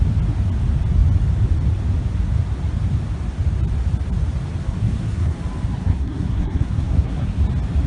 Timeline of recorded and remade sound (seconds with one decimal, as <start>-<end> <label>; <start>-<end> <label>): 0.0-4.6 recorded; 4.6-5.4 remade; 5.4-5.9 recorded; 5.9-7.4 remade; 7.4-7.9 recorded